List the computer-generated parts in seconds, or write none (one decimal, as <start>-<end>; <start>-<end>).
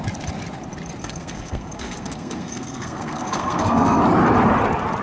1.0-4.0